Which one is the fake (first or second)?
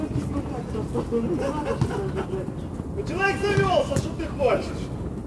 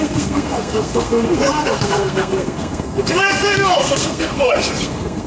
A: second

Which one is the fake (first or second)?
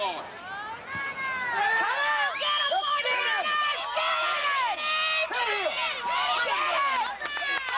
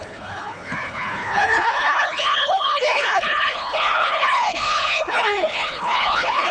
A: second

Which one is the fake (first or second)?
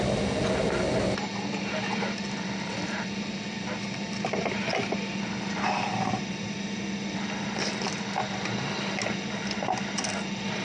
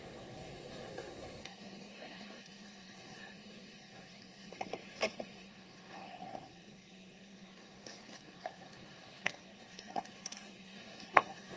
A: second